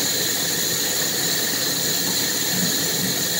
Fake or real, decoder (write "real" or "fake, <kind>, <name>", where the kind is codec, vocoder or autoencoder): real